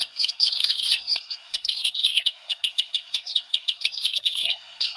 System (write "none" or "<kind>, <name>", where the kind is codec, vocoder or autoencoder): codec, SNAC